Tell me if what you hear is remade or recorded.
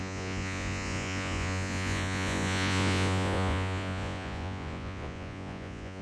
remade